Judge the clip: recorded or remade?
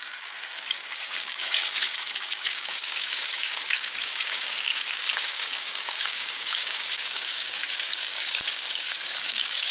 remade